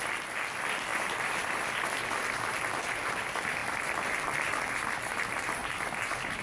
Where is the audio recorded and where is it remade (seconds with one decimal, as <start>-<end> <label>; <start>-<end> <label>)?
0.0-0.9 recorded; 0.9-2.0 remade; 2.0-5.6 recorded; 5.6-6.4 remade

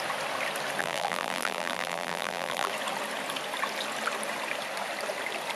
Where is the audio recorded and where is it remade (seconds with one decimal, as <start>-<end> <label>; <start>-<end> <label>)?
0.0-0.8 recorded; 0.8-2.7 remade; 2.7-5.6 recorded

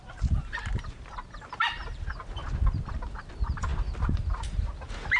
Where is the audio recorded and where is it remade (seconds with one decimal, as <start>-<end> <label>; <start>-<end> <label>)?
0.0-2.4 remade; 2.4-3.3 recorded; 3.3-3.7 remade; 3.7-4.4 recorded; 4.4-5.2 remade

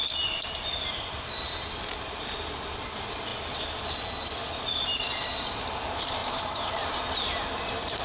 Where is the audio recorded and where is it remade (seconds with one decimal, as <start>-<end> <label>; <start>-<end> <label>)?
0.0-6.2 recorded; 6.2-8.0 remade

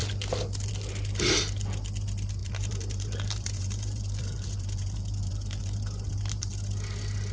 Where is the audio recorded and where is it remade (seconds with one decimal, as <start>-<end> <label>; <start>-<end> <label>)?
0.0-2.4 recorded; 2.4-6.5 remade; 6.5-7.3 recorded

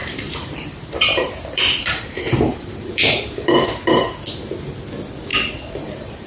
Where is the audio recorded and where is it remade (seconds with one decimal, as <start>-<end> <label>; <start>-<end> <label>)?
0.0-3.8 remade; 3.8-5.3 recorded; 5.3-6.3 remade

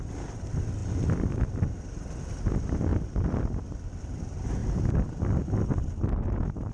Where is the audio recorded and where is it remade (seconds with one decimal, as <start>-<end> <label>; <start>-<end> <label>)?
0.0-6.7 recorded

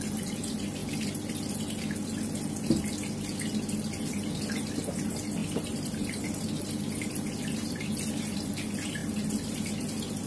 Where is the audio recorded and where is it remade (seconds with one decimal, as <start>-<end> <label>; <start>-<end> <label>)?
0.0-5.4 recorded; 5.4-7.1 remade; 7.1-9.0 recorded; 9.0-9.7 remade; 9.7-10.3 recorded